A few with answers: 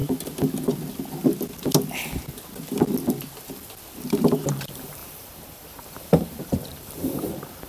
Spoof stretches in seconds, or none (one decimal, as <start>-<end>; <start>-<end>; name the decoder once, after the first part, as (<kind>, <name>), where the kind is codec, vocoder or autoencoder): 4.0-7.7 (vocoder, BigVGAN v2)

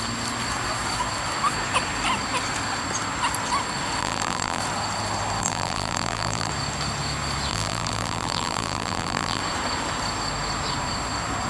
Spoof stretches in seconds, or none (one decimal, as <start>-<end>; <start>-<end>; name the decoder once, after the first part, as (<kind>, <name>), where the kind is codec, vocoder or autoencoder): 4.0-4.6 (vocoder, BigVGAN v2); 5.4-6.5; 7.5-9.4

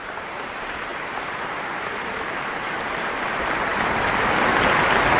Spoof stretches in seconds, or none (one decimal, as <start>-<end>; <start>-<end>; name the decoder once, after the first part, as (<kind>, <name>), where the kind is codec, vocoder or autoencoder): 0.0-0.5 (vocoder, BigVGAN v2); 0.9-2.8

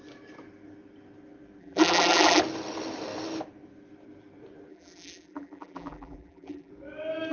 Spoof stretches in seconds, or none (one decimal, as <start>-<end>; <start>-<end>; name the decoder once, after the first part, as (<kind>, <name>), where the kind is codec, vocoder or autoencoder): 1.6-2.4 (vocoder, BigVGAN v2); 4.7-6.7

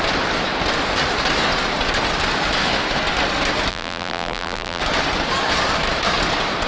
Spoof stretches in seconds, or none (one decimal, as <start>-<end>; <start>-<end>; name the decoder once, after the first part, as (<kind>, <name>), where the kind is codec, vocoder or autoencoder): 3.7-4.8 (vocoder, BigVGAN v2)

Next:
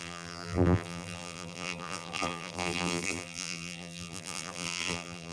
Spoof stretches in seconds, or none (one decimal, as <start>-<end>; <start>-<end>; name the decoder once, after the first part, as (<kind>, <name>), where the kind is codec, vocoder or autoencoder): 0.0-5.3 (vocoder, BigVGAN v2)

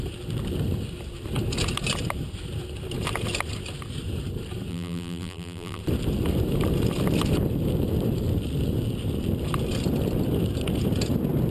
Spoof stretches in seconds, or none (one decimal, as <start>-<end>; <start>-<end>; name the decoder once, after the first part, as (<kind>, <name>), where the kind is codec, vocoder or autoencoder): 4.7-5.8 (vocoder, BigVGAN v2)